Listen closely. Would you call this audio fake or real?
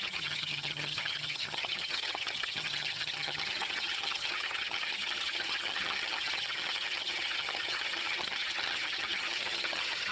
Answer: fake